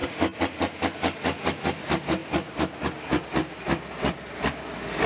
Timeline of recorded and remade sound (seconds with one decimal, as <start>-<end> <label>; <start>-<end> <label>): 0.0-5.1 recorded